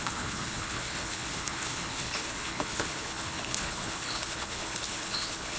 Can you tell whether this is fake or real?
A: fake